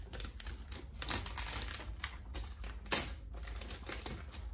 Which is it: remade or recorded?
recorded